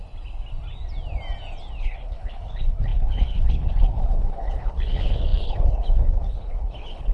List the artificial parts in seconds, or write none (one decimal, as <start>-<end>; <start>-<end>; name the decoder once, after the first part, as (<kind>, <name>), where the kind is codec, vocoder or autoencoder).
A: 1.8-7.1 (codec, HILCodec)